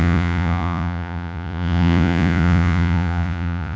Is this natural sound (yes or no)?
no